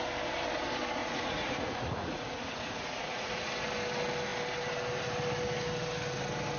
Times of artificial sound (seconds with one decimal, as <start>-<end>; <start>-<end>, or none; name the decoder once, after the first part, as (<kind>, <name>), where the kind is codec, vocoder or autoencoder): 1.0-3.5 (vocoder, Vocos)